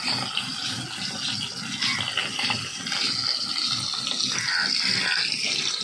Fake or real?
real